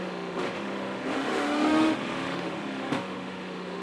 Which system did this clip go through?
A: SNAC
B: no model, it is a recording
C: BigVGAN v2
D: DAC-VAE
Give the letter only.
D